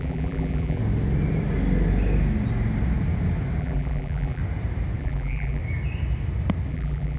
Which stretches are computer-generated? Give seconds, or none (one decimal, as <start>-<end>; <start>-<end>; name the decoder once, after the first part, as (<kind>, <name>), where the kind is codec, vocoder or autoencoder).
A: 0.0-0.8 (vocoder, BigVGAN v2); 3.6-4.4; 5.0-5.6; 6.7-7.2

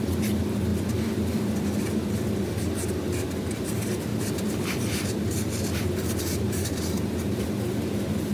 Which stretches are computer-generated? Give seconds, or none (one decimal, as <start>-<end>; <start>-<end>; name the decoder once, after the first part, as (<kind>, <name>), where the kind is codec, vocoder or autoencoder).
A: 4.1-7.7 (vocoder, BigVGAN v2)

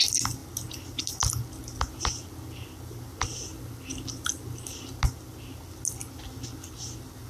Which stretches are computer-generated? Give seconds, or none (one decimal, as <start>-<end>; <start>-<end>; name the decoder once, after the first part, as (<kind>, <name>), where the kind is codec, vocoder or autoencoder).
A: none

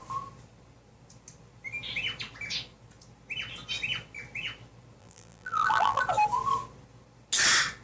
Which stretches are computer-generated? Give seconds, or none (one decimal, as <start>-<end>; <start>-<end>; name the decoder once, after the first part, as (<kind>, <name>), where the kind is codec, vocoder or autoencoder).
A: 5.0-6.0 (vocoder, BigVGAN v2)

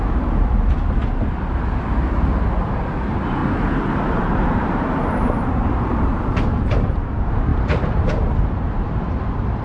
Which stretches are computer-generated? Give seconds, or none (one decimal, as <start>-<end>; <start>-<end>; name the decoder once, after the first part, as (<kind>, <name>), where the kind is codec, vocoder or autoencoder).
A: 0.0-1.0 (vocoder, BigVGAN v2); 2.6-9.6

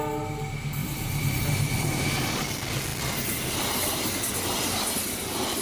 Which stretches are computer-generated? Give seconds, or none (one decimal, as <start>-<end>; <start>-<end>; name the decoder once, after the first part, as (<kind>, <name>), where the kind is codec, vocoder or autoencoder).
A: 0.8-2.5 (vocoder, BigVGAN v2)